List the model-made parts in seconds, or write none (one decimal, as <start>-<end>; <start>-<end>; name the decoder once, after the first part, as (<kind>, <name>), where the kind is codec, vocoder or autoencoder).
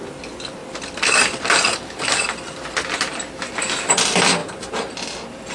0.6-3.9 (vocoder, BigVGAN v2); 4.4-5.5